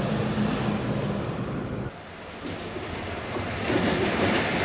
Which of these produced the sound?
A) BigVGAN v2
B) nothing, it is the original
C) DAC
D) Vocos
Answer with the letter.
B